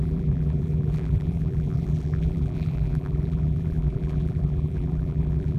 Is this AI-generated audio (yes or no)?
yes